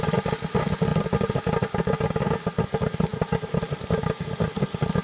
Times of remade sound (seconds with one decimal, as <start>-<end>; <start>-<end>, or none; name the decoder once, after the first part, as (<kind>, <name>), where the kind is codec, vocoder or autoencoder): none

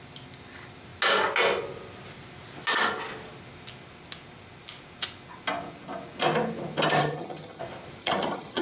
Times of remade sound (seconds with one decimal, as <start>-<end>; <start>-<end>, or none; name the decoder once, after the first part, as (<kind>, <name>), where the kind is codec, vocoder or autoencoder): 7.0-7.6 (vocoder, HiFi-GAN); 8.0-8.6

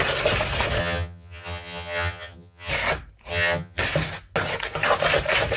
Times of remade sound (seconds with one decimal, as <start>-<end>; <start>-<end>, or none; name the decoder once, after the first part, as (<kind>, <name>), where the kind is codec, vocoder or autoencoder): 0.8-2.7 (vocoder, HiFi-GAN); 3.3-3.8

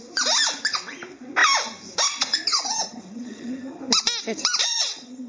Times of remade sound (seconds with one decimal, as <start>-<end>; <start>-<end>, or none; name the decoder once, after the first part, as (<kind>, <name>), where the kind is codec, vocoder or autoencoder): 2.5-3.8 (vocoder, HiFi-GAN); 4.6-5.3

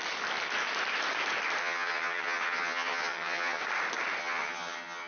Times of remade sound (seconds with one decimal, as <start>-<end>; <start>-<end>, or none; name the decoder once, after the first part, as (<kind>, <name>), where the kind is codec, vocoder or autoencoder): 1.6-3.6 (vocoder, HiFi-GAN); 4.2-5.1

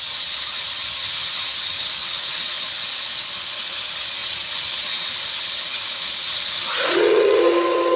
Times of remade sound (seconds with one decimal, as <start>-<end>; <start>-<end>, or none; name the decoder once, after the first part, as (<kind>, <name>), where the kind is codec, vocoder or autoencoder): 0.0-8.0 (vocoder, HiFi-GAN)

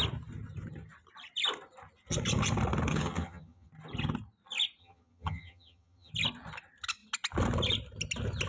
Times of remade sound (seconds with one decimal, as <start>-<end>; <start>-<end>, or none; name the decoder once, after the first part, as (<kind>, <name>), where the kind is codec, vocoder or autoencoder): 2.9-3.7 (vocoder, HiFi-GAN); 4.8-6.1